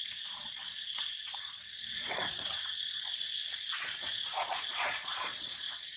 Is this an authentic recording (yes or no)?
no